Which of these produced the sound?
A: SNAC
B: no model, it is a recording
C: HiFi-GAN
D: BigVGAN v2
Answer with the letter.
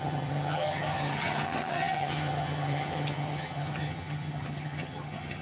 C